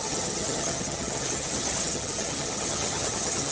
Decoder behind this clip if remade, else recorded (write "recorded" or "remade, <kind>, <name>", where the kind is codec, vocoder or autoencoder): remade, vocoder, HiFi-GAN